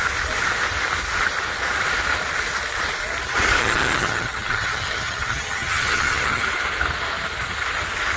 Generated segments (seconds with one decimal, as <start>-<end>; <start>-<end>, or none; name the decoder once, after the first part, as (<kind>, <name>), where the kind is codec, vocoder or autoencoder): 3.6-6.4 (vocoder, HiFi-GAN)